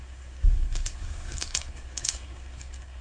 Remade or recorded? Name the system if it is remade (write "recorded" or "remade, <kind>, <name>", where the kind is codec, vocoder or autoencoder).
remade, codec, SNAC